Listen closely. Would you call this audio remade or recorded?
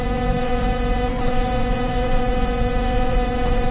remade